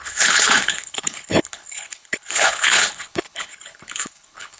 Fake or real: fake